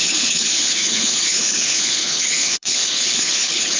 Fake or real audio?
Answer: fake